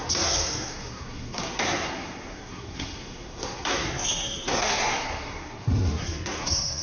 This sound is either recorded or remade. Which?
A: remade